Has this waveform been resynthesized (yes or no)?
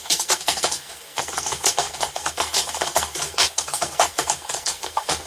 yes